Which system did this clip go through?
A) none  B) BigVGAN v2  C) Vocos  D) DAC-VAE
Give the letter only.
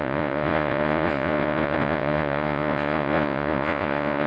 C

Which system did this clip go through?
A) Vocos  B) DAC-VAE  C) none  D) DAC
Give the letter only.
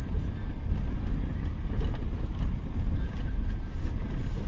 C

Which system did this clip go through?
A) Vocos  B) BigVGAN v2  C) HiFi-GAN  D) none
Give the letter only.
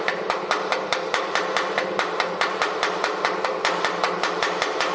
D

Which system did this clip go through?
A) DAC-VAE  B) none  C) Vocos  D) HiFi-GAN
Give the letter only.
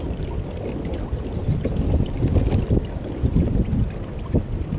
B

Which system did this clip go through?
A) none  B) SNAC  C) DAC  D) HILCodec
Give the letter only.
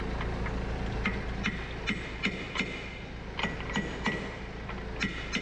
A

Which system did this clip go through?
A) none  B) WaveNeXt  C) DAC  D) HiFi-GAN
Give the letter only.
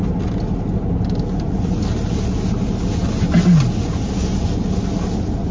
A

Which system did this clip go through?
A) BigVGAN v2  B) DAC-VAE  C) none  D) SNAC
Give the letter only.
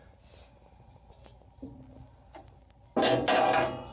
C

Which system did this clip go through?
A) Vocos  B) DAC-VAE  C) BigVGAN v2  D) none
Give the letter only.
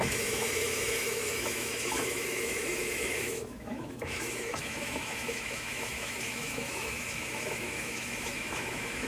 B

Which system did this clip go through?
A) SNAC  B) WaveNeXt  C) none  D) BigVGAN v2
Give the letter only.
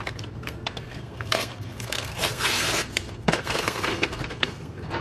A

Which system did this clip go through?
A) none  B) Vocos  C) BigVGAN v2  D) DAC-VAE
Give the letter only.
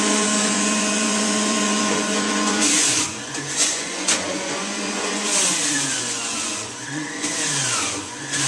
B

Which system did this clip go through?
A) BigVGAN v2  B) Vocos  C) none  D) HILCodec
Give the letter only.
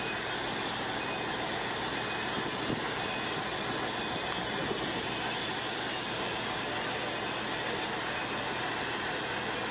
C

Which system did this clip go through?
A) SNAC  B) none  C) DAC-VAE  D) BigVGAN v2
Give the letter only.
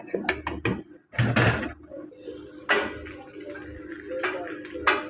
B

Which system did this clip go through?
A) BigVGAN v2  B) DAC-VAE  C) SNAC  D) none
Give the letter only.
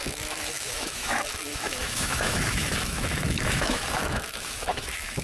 B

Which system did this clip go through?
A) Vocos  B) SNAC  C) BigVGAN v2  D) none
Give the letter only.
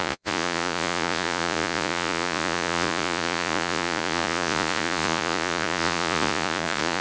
A